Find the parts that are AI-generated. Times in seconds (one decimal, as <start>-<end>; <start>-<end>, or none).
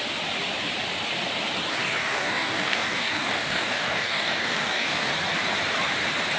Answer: 1.8-5.1